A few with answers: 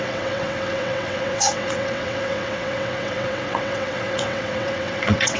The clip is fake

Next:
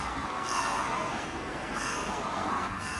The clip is fake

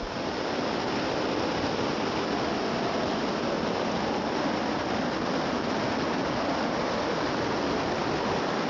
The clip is real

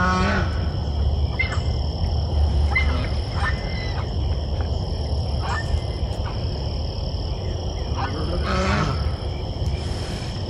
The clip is real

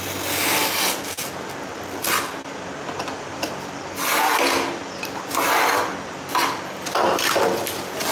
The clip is real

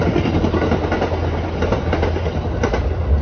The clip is real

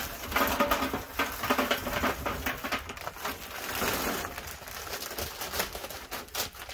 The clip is real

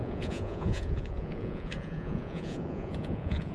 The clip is fake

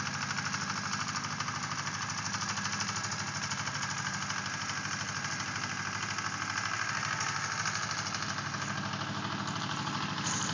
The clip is real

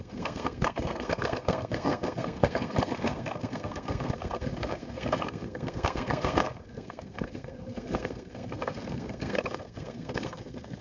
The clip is fake